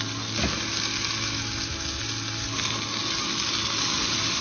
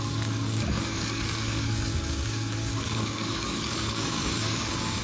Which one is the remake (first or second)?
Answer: second